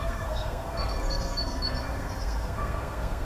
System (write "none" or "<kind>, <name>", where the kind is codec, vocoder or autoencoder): codec, SNAC